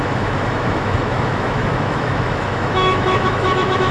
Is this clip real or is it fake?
fake